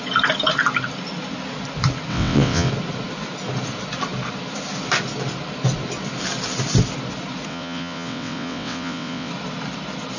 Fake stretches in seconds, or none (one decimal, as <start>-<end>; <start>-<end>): 2.1-2.7; 7.5-9.3